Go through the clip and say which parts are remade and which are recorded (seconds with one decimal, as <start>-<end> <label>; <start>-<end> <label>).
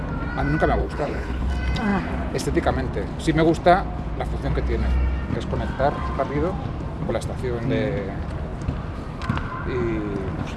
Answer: 0.0-0.8 recorded; 0.8-1.5 remade; 1.5-10.6 recorded